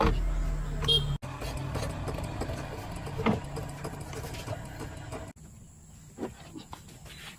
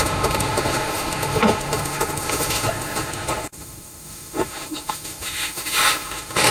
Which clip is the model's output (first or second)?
second